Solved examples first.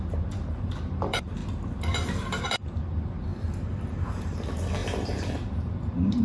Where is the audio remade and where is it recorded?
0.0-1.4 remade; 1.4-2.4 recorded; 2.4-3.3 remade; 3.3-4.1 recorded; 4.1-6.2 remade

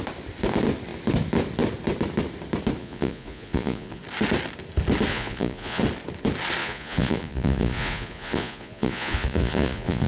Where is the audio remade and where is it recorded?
0.0-2.8 recorded; 2.8-4.0 remade; 4.0-5.1 recorded; 5.1-5.8 remade; 5.8-6.6 recorded; 6.6-10.1 remade

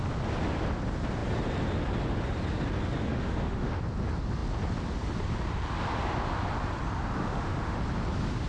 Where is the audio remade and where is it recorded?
0.0-3.1 recorded; 3.1-3.8 remade; 3.8-7.2 recorded; 7.2-7.8 remade; 7.8-8.5 recorded

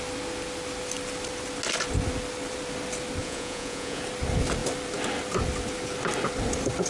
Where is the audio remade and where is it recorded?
0.0-3.2 recorded; 3.2-4.0 remade; 4.0-6.9 recorded